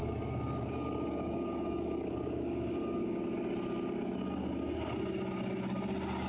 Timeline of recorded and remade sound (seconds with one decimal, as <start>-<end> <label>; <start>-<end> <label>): 0.0-3.2 remade; 3.2-6.3 recorded